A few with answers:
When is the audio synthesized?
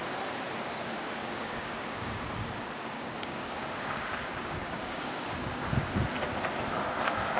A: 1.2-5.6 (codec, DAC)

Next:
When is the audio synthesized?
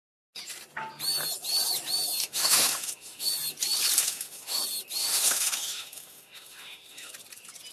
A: 2.2-3.3 (autoencoder, DAC-VAE); 4.0-4.6; 5.0-7.1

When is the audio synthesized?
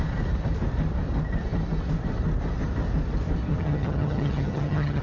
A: 3.5-5.0 (vocoder, HiFi-GAN)